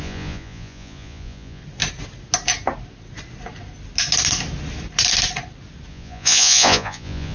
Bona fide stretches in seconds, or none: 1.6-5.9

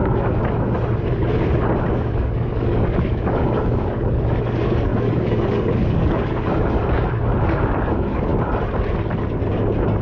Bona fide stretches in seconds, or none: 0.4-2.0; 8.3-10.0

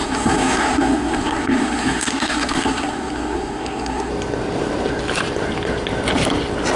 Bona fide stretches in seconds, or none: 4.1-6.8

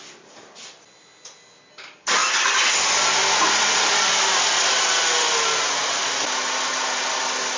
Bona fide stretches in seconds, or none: 0.0-7.6

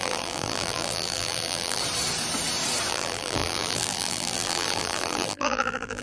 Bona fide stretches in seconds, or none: 1.8-2.9

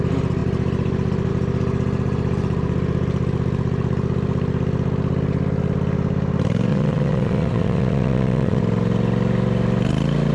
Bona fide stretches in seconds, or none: 0.0-6.7; 8.6-10.3

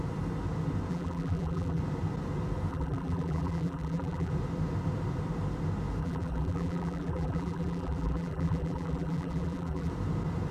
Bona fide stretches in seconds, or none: 0.0-0.9; 1.8-2.7; 4.3-6.0; 9.9-10.5

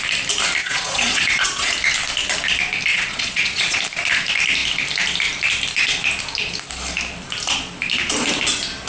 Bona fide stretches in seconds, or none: 0.0-0.6; 1.7-2.9; 3.8-8.9